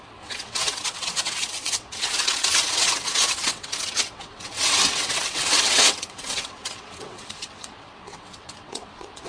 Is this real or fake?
fake